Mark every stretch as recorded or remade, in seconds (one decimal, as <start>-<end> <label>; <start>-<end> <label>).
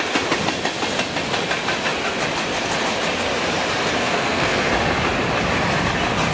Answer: 0.0-4.0 recorded; 4.0-4.7 remade; 4.7-6.3 recorded